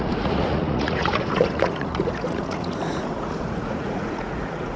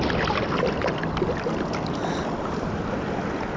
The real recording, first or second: second